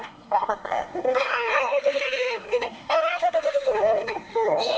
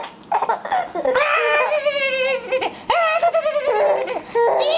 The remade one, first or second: first